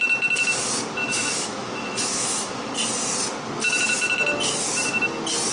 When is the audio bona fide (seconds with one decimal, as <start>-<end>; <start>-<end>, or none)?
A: 0.0-1.0; 2.7-5.5

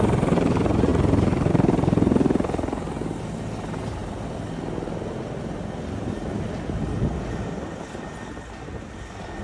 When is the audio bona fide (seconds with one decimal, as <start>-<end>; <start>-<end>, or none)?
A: 0.0-9.4